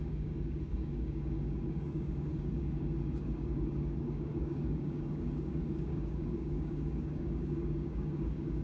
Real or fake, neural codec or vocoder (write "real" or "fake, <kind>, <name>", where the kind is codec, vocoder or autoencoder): fake, codec, DAC